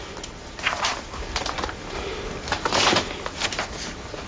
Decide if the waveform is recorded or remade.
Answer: recorded